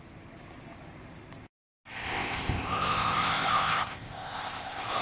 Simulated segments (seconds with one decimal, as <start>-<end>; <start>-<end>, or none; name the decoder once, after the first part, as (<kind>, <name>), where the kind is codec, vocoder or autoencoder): 1.9-5.0 (codec, ZipCodec)